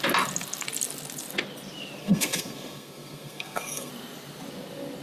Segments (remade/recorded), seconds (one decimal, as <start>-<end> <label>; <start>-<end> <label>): 0.0-2.0 recorded; 2.0-3.9 remade; 3.9-5.0 recorded